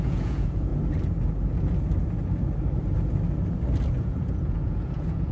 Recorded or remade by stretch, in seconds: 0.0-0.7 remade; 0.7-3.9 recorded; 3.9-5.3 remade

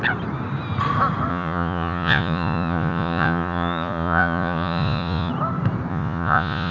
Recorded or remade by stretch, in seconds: 0.0-1.3 recorded; 1.3-5.3 remade; 5.3-5.9 recorded; 5.9-6.7 remade

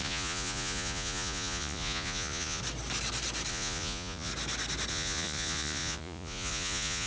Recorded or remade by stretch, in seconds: 0.0-2.6 remade; 2.6-3.5 recorded; 3.5-4.3 remade; 4.3-4.9 recorded; 4.9-7.1 remade

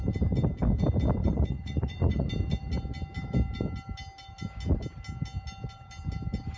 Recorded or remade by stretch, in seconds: 0.0-1.2 recorded; 1.2-2.3 remade; 2.3-6.6 recorded

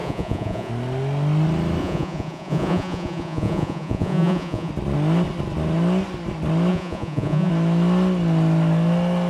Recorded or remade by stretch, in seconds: 0.0-0.7 remade; 0.7-1.8 recorded; 1.8-4.7 remade; 4.7-6.7 recorded; 6.7-7.5 remade; 7.5-9.3 recorded

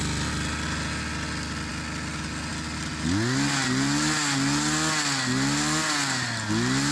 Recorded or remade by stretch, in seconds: 0.0-6.9 recorded

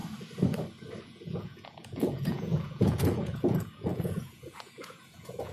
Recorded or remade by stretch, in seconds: 0.0-1.0 recorded; 1.0-5.5 remade

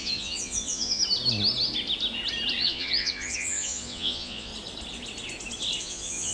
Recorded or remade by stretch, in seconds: 0.0-1.0 remade; 1.0-2.6 recorded; 2.6-4.5 remade; 4.5-5.8 recorded; 5.8-6.3 remade